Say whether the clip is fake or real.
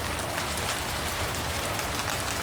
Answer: real